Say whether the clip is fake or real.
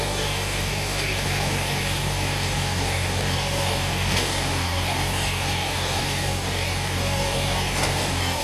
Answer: fake